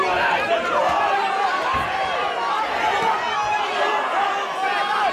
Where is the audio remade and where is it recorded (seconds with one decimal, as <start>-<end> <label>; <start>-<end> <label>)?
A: 0.0-5.1 recorded